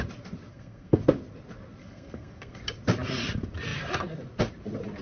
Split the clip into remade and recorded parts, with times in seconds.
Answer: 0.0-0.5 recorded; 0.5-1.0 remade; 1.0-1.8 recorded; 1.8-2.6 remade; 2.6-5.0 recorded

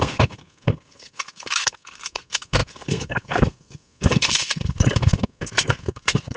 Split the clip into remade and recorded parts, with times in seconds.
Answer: 0.0-6.4 remade